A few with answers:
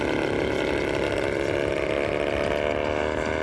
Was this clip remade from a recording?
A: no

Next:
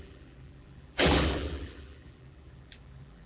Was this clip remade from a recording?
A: yes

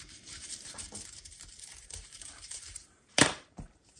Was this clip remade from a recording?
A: yes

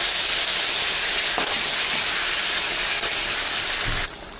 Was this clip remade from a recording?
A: no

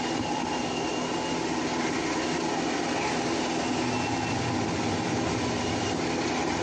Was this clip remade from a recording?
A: no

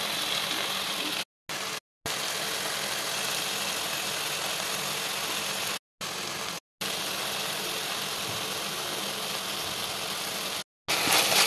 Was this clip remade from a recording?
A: no